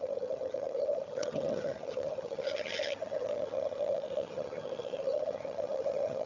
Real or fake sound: fake